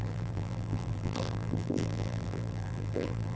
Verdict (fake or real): fake